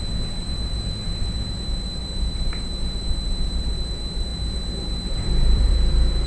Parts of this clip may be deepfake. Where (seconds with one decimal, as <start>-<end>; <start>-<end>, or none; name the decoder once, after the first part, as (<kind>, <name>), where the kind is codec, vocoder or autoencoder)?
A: 0.0-6.3 (vocoder, BigVGAN v2)